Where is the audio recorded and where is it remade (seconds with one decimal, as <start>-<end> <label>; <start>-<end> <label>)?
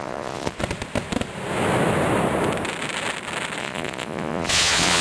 0.0-0.6 remade; 0.6-3.6 recorded; 3.6-5.0 remade